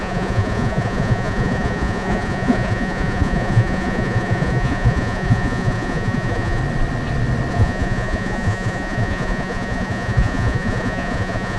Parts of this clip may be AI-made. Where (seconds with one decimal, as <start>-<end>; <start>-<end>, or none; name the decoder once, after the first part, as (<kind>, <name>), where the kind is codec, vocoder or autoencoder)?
0.0-6.6 (vocoder, Vocos); 7.5-11.6

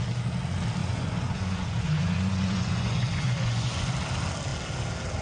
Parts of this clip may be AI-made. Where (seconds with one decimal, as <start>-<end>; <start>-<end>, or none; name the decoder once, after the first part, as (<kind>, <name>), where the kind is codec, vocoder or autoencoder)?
0.8-3.9 (vocoder, Vocos)

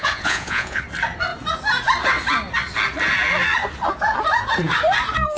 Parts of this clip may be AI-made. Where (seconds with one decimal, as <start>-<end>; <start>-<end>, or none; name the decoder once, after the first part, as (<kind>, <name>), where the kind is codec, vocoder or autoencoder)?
0.0-0.8 (vocoder, Vocos)

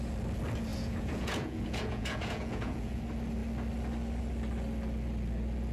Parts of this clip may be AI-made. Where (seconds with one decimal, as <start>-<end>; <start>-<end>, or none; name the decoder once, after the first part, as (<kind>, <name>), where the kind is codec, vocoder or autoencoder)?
0.7-3.0 (vocoder, Vocos)

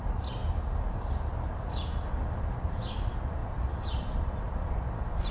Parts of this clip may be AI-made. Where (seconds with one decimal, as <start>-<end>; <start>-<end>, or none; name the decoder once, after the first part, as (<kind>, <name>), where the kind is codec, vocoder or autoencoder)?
none